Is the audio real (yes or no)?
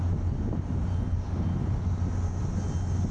yes